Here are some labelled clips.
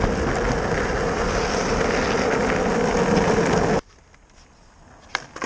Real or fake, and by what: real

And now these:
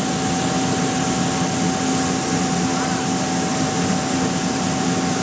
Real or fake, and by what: real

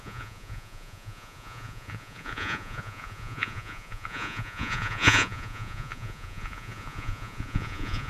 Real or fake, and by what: fake, vocoder, Vocos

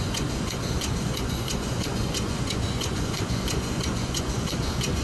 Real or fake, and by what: fake, vocoder, Vocos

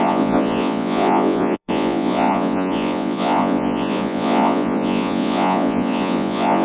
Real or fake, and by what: fake, vocoder, Vocos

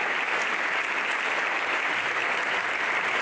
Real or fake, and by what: real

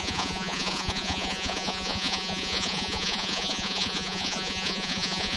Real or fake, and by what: fake, vocoder, Vocos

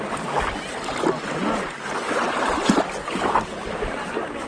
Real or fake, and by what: real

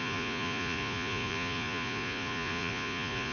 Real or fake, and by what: fake, vocoder, Vocos